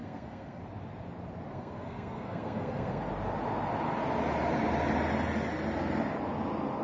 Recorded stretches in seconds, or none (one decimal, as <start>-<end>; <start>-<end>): 0.6-1.5; 3.1-6.8